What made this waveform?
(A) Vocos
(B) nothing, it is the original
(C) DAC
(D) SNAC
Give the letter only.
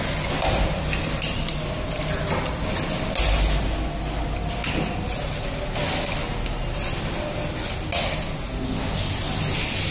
B